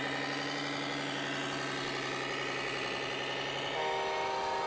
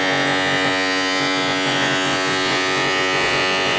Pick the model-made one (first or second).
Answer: second